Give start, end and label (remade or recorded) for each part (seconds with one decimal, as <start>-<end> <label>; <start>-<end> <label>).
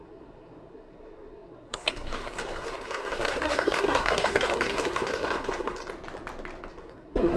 0.0-5.8 remade; 5.8-6.7 recorded; 6.7-7.4 remade